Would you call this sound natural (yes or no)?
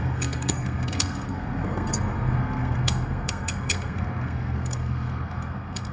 no